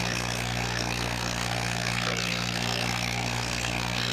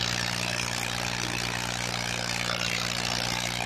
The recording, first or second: second